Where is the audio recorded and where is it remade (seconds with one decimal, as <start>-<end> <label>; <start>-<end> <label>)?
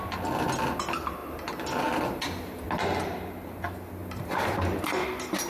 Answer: 0.0-4.0 recorded; 4.0-4.6 remade; 4.6-5.5 recorded